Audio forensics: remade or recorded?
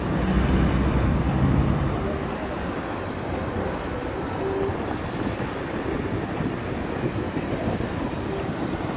recorded